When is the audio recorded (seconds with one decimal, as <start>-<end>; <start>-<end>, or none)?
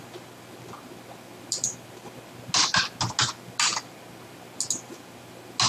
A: 0.0-5.7